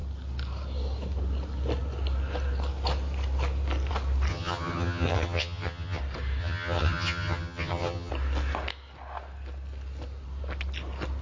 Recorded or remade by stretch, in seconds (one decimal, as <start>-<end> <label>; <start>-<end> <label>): 0.0-4.3 recorded; 4.3-6.0 remade; 6.0-6.4 recorded; 6.4-8.1 remade; 8.1-11.2 recorded